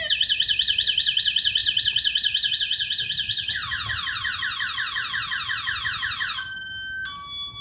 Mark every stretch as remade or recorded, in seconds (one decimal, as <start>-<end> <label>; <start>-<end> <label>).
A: 0.0-7.6 recorded